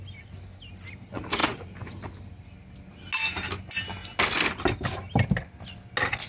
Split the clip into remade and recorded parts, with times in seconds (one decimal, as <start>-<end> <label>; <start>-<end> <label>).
0.0-6.3 recorded